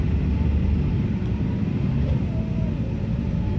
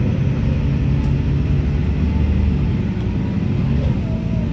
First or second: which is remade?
first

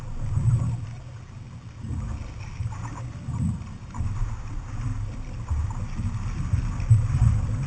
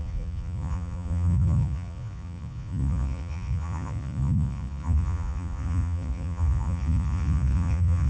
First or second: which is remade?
second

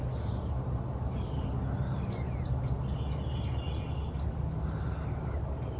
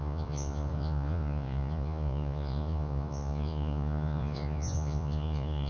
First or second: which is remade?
second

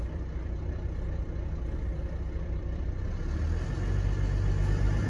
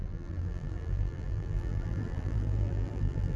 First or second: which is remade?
second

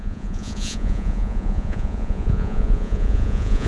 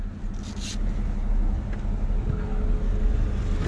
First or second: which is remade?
first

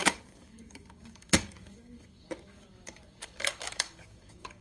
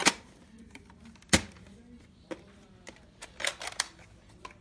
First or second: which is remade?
first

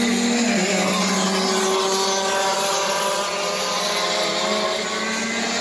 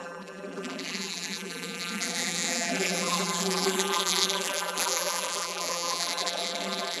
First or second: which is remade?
second